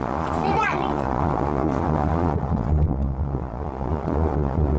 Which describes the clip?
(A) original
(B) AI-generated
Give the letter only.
B